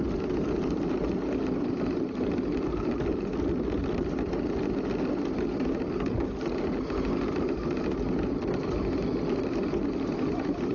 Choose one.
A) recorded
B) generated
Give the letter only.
A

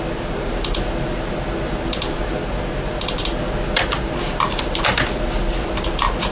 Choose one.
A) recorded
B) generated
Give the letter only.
A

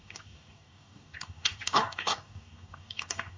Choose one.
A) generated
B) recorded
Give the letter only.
A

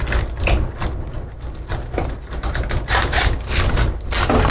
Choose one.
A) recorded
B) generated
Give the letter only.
A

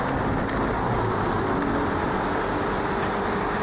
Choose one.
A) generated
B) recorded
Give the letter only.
B